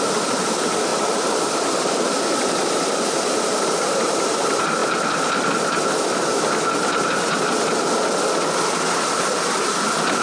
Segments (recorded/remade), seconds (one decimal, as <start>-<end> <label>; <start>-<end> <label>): 0.0-10.2 recorded